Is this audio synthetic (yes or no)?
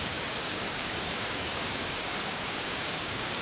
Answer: yes